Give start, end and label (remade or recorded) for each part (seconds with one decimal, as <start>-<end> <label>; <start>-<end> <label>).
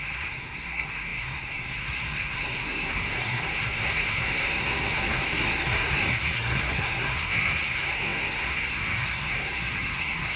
0.0-10.4 remade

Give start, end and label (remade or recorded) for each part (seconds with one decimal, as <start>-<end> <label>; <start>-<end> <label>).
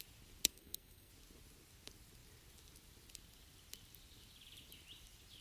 0.0-0.5 recorded; 0.5-1.1 remade; 1.1-5.4 recorded